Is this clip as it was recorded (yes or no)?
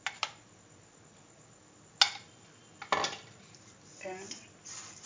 yes